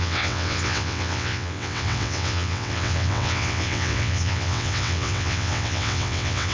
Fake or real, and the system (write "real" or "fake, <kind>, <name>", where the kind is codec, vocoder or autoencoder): fake, vocoder, WaveNeXt